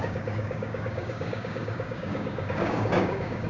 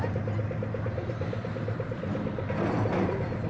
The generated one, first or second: first